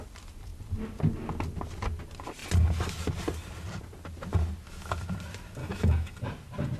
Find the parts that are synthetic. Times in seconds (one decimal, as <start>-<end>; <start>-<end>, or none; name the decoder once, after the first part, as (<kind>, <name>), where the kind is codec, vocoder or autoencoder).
5.6-6.2 (autoencoder, DAC-VAE)